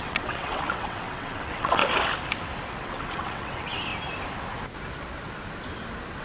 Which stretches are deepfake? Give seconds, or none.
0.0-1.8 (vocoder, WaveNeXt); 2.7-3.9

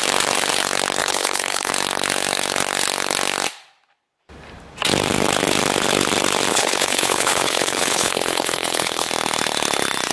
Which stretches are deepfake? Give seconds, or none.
1.0-1.7 (codec, HILCodec); 6.5-9.1